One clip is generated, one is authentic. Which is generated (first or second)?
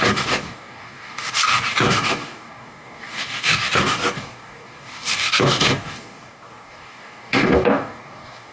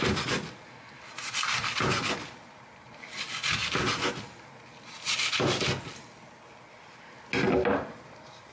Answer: first